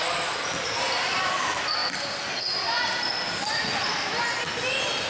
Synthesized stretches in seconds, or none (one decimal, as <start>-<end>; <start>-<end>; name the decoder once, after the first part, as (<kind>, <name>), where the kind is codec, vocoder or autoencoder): none